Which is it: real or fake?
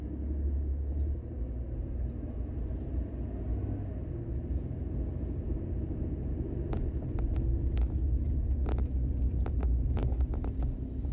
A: real